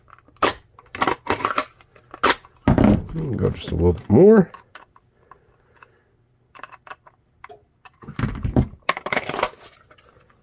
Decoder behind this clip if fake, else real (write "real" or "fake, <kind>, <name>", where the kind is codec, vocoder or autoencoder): real